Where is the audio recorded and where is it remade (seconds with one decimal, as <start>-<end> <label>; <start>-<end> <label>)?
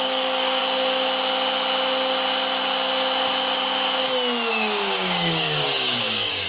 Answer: 0.0-0.6 remade; 0.6-4.5 recorded; 4.5-6.5 remade